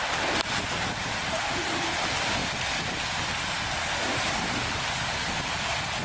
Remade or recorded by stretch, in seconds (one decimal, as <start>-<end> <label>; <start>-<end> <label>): 0.0-6.0 recorded